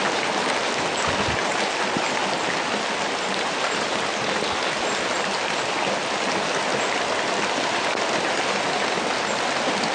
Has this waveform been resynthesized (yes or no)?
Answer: no